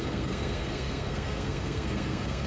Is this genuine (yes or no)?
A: no